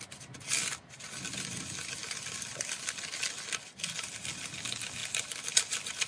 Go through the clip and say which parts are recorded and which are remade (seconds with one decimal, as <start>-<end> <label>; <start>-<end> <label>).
0.0-6.1 recorded